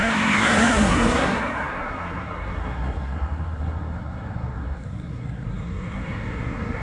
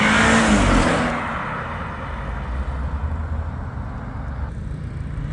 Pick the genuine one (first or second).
second